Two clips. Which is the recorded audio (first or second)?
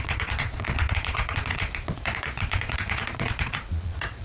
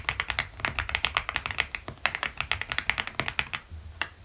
second